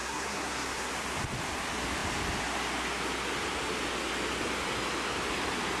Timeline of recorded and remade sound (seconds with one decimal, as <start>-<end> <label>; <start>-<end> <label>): 0.0-0.9 remade; 0.9-5.8 recorded